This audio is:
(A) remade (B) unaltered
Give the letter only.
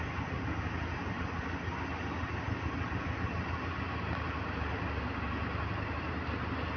B